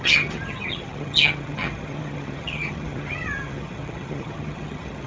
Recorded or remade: remade